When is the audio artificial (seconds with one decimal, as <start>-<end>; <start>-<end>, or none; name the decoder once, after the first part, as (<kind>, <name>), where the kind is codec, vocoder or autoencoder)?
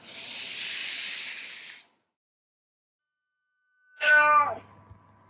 3.0-4.1 (codec, HILCodec)